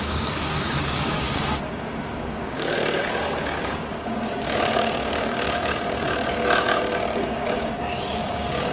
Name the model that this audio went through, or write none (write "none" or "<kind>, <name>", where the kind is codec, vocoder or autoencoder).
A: codec, DAC